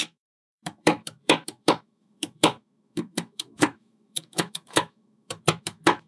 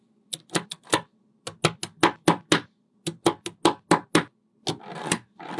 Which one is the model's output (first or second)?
first